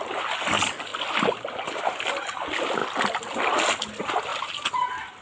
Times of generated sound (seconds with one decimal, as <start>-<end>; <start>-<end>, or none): none